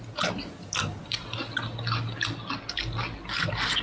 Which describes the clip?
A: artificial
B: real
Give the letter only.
B